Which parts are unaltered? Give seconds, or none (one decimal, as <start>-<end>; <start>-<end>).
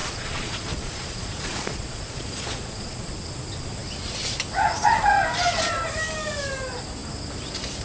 3.1-7.8